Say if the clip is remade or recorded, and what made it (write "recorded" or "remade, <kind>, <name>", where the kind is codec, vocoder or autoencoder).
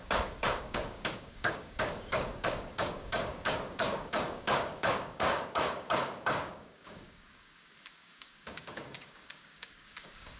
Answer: remade, codec, DAC